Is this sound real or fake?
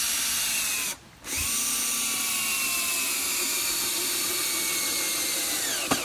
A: real